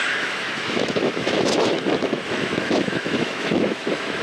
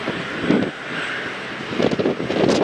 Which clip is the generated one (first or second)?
first